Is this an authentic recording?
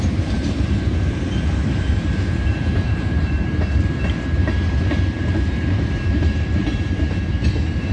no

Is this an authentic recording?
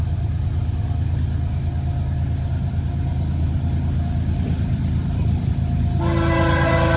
yes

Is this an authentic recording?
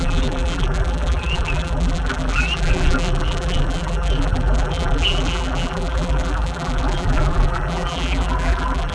no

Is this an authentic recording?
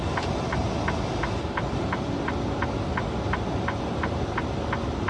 yes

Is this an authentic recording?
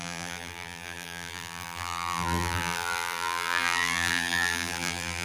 no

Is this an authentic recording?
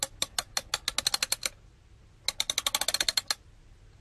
yes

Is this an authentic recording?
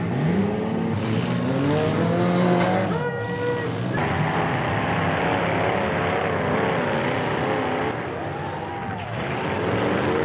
yes